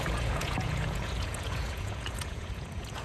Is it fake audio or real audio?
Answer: fake